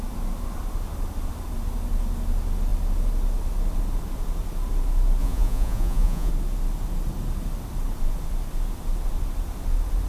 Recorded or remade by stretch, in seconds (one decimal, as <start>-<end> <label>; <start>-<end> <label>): 0.0-5.2 recorded; 5.2-6.3 remade; 6.3-10.1 recorded